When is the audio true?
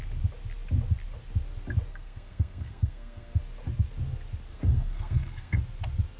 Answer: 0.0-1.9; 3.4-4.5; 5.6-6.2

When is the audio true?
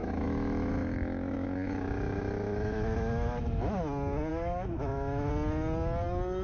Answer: 3.8-4.3; 5.3-6.4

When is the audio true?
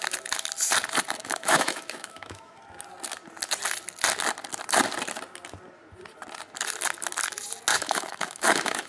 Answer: 0.0-1.2; 2.6-7.7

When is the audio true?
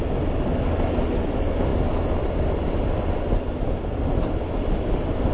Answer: 0.0-5.3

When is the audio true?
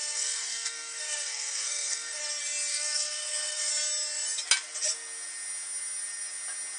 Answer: 2.2-2.7; 3.7-6.8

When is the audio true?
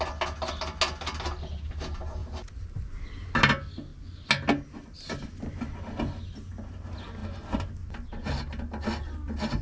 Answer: 0.0-9.6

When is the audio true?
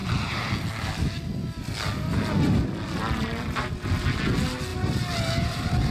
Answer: 4.7-5.4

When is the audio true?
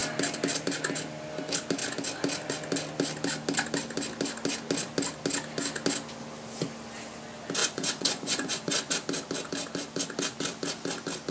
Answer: 0.0-7.6; 8.9-11.3